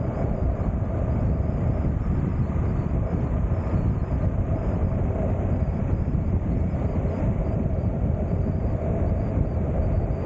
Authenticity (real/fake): fake